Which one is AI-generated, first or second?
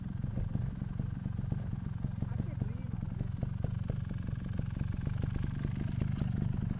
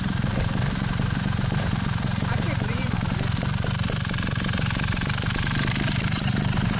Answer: second